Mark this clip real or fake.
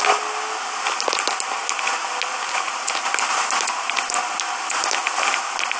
real